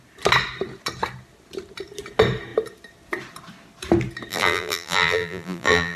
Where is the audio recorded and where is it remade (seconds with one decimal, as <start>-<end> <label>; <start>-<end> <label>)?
0.0-4.3 recorded; 4.3-6.0 remade